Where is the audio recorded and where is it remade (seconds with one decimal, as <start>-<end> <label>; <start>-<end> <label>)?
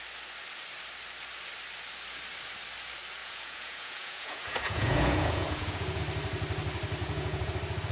0.0-3.2 recorded; 3.2-6.0 remade; 6.0-7.0 recorded; 7.0-7.5 remade; 7.5-7.9 recorded